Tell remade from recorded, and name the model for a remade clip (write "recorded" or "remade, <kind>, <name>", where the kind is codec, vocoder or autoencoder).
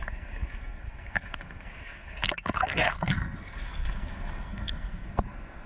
remade, codec, SNAC